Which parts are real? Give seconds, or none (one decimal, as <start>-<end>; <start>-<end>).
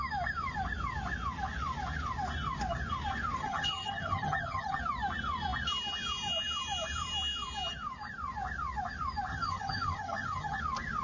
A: 0.0-3.4; 4.8-9.3; 10.6-11.0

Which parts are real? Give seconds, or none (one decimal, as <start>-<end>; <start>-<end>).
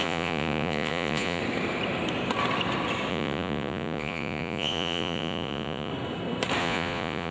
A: 1.4-3.1; 5.9-6.6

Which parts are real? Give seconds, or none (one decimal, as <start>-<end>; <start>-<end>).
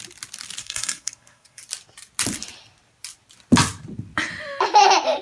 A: 0.0-0.6; 1.6-5.2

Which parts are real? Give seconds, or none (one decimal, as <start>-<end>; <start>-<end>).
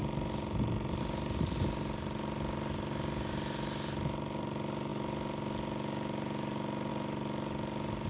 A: 0.0-8.1